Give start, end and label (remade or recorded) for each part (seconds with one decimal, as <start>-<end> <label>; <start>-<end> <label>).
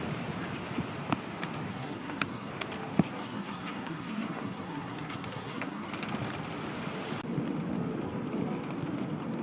0.0-1.7 recorded; 1.7-2.5 remade; 2.5-3.2 recorded; 3.2-5.9 remade; 5.9-9.4 recorded